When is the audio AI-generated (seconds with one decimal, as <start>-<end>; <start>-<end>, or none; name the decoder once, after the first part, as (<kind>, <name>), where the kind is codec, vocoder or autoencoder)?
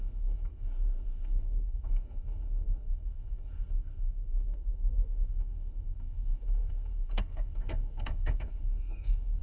0.0-9.4 (codec, SNAC)